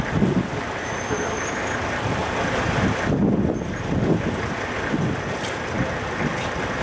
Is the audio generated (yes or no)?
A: no